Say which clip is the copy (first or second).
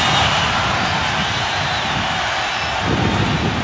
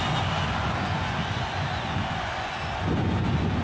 second